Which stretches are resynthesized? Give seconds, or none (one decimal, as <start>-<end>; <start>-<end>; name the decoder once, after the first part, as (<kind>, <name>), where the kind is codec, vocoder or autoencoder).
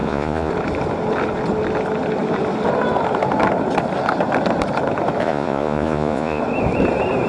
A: 0.0-0.5 (vocoder, Vocos); 5.2-6.4